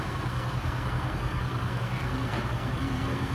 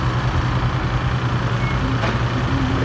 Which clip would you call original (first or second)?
second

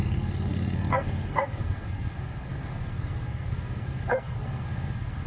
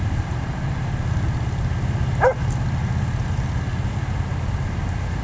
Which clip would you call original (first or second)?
second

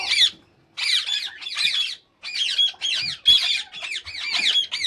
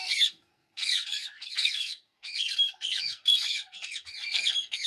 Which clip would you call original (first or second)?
first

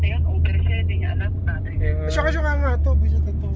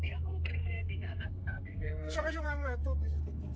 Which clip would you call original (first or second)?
first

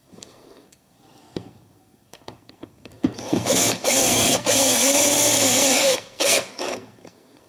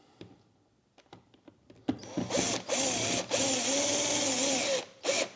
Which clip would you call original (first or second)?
second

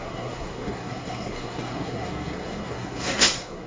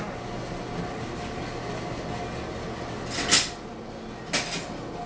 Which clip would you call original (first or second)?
second